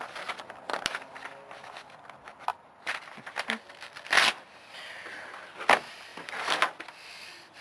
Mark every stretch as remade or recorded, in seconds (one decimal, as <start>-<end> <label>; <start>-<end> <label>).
0.0-7.6 recorded